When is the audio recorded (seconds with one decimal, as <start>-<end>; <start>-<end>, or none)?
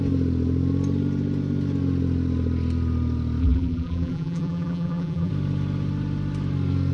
0.0-3.4; 5.3-6.9